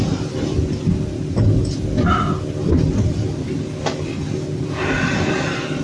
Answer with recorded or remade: recorded